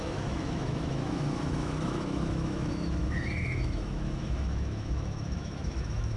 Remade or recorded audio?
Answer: remade